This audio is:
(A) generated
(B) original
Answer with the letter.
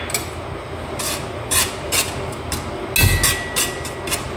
B